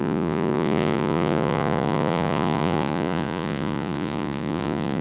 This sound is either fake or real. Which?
fake